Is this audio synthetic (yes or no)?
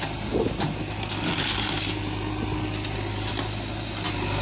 no